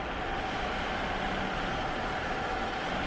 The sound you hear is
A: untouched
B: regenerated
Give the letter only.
A